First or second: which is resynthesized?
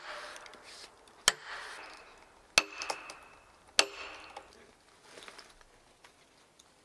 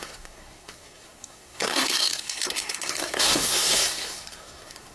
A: second